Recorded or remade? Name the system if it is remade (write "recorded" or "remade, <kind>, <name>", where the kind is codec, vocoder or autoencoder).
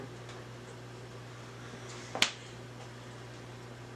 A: recorded